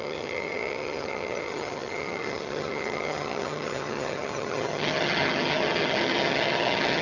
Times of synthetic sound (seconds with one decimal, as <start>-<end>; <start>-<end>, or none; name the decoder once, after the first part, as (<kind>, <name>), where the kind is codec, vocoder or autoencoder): 0.0-7.0 (vocoder, HiFi-GAN)

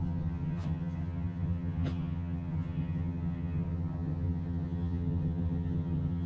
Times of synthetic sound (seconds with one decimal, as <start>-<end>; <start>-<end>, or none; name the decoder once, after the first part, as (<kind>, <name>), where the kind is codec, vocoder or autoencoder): 0.0-6.3 (vocoder, HiFi-GAN)